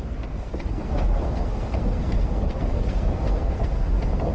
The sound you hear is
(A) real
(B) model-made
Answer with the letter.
B